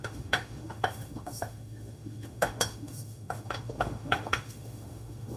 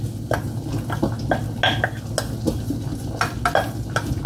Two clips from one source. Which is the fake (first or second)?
first